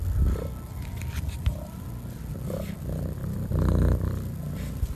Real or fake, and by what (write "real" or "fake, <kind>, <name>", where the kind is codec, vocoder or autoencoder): real